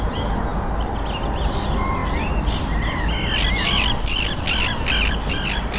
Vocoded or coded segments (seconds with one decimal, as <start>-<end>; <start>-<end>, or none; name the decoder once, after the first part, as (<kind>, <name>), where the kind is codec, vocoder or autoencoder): none